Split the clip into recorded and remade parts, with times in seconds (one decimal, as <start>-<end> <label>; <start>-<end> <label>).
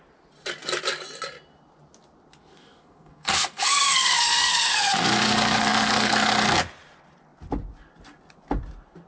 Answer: 0.0-2.4 recorded; 2.4-6.3 remade; 6.3-9.1 recorded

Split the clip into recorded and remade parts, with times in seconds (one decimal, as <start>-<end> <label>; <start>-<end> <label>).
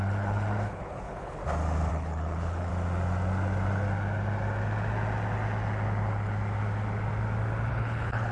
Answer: 0.0-1.4 remade; 1.4-1.9 recorded; 1.9-2.7 remade; 2.7-7.7 recorded; 7.7-8.3 remade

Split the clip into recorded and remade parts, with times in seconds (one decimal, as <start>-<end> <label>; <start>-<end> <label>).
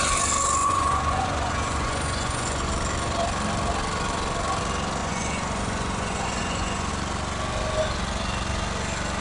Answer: 0.0-0.6 recorded; 0.6-2.7 remade; 2.7-5.0 recorded; 5.0-6.9 remade; 6.9-9.2 recorded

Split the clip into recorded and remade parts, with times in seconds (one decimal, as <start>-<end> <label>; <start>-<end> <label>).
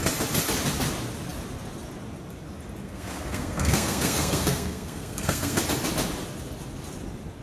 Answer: 0.0-2.8 recorded; 2.8-5.6 remade; 5.6-7.4 recorded